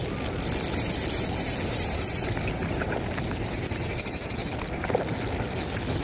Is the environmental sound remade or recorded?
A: recorded